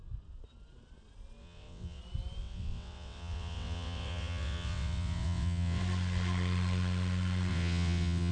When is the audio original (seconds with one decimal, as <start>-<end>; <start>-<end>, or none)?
0.0-1.4; 2.0-2.4; 5.8-7.5